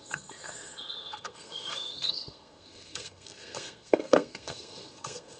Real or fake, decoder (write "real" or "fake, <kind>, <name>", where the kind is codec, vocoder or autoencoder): fake, codec, SNAC